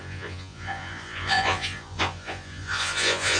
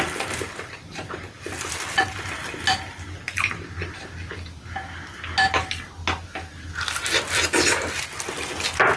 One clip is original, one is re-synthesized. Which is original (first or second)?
second